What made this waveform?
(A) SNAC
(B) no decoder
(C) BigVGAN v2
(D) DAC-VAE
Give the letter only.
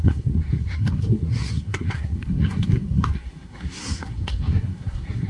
A